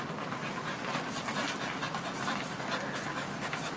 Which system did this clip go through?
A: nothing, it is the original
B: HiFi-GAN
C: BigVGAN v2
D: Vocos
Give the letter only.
A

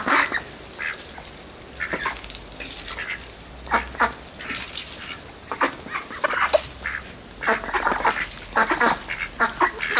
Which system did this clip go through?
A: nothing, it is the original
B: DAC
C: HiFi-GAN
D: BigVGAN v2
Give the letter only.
A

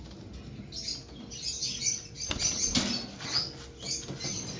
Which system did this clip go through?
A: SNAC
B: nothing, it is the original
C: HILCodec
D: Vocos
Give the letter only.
B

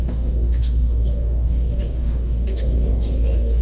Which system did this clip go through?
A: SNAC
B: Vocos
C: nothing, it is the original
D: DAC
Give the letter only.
D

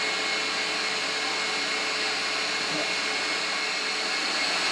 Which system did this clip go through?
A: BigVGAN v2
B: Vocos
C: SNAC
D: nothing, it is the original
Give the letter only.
D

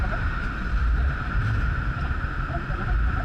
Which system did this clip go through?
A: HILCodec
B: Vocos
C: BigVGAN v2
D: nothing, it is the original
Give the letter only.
C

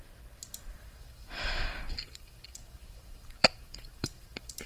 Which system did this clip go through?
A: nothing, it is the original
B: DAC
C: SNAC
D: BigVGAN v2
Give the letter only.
D